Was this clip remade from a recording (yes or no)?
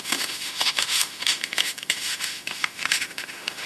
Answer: yes